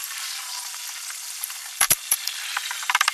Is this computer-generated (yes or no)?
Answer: yes